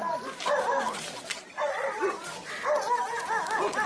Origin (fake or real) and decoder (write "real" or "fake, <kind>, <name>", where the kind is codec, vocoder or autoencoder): real